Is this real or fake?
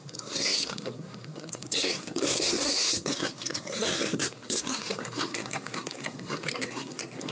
fake